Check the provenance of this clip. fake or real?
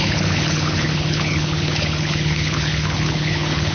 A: fake